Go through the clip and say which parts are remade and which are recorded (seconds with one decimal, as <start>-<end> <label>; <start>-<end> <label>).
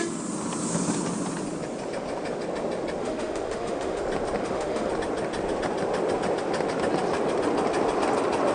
0.0-3.0 recorded; 3.0-4.0 remade; 4.0-4.4 recorded; 4.4-4.9 remade; 4.9-8.5 recorded